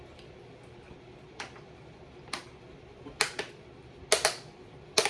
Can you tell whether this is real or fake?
real